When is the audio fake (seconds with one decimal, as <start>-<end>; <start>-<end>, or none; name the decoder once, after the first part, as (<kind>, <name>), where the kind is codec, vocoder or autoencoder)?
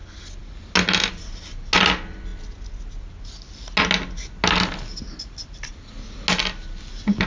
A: none